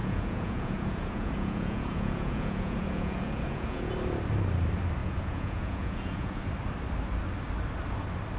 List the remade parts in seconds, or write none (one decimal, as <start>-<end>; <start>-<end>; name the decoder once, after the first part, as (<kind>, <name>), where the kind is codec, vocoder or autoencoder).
0.0-3.9 (vocoder, Vocos); 5.0-6.4